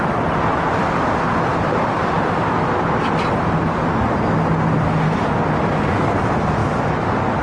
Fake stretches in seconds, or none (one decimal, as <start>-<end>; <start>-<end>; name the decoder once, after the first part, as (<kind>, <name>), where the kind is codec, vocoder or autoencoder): none